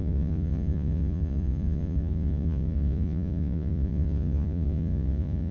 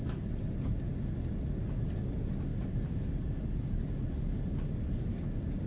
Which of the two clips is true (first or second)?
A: second